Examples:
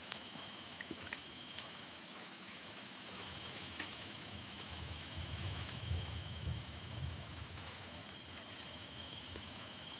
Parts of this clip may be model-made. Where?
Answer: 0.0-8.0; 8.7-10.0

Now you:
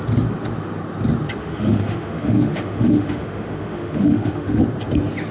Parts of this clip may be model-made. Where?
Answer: 1.4-4.6

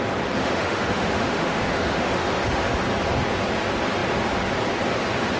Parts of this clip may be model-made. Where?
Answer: 0.4-2.8

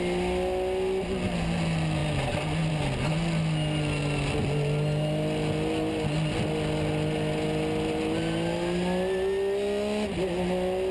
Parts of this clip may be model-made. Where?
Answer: none